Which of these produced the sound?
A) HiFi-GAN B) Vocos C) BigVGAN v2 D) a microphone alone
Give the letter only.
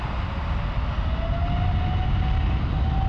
D